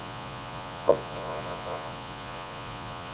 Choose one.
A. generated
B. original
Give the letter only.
A